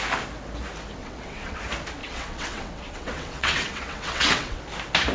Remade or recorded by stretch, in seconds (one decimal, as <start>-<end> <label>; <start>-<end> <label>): 0.0-1.0 recorded; 1.0-1.6 remade; 1.6-2.0 recorded; 2.0-4.6 remade; 4.6-5.1 recorded